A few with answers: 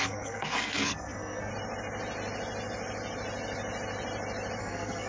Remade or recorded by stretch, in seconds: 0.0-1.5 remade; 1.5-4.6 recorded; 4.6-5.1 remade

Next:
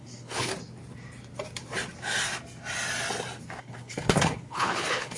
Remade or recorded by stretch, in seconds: 0.0-0.5 remade; 0.5-3.6 recorded; 3.6-5.2 remade

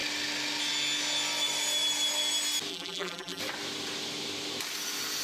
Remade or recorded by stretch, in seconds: 0.0-2.7 recorded; 2.7-3.4 remade; 3.4-5.2 recorded

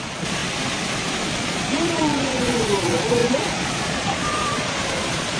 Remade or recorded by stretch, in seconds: 0.0-0.4 remade; 0.4-1.3 recorded; 1.3-5.4 remade